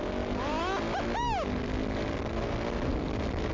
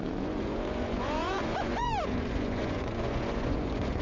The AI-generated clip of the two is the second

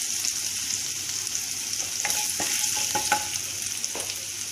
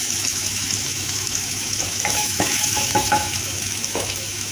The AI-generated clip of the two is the second